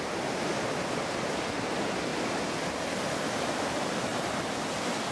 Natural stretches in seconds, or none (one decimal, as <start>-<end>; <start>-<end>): 0.5-1.0; 2.1-3.3; 4.1-5.1